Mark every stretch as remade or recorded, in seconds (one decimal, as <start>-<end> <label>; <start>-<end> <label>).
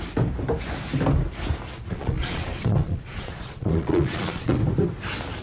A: 0.0-1.9 recorded; 1.9-4.6 remade; 4.6-5.4 recorded